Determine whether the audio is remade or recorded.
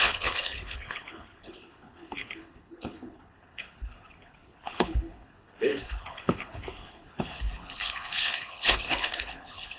remade